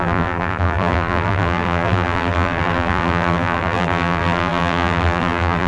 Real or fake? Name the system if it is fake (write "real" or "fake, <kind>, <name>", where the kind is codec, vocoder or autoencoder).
fake, vocoder, BigVGAN v2